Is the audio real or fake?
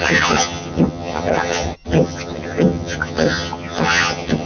fake